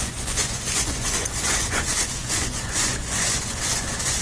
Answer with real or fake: fake